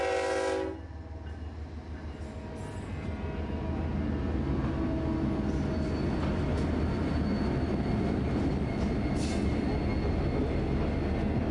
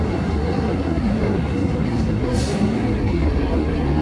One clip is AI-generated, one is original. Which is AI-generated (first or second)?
second